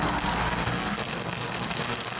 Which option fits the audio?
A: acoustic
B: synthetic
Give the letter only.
B